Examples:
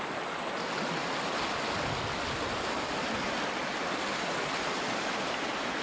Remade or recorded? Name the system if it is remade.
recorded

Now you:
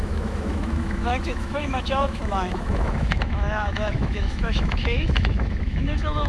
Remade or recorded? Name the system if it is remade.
remade, autoencoder, DAC-VAE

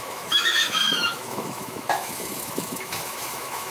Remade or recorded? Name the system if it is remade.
remade, autoencoder, DAC-VAE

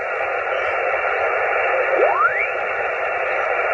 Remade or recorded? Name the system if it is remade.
recorded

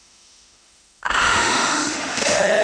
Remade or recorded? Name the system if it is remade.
remade, autoencoder, DAC-VAE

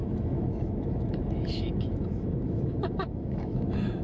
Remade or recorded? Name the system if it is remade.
remade, autoencoder, DAC-VAE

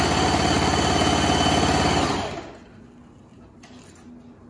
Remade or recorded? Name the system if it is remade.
recorded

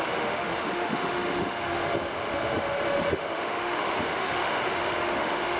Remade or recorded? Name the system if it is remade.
remade, autoencoder, DAC-VAE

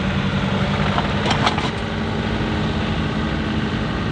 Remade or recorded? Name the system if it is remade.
recorded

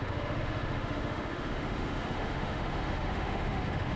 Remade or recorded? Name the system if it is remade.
remade, autoencoder, DAC-VAE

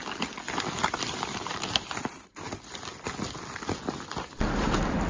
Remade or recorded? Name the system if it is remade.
recorded